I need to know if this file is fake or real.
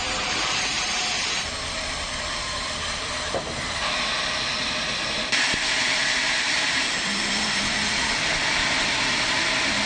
fake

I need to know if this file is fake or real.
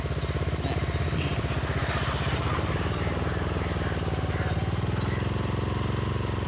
real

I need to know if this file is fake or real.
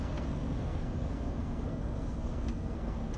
fake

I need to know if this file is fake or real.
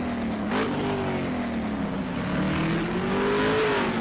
real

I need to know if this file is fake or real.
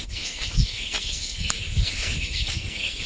fake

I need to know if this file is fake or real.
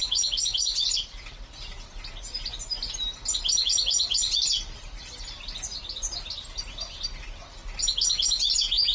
real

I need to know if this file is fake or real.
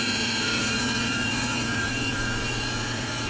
fake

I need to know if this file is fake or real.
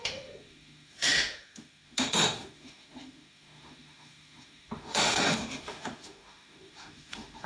fake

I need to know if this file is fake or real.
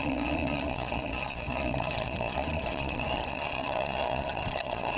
fake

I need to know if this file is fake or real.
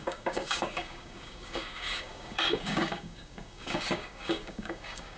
fake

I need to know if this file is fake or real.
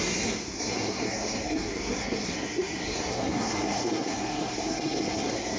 fake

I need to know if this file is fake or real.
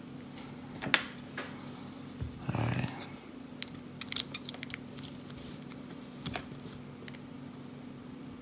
real